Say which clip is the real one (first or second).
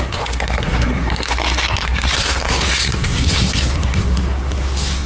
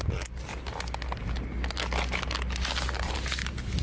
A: second